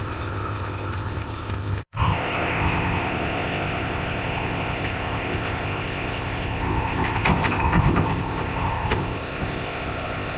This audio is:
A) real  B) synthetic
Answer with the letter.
B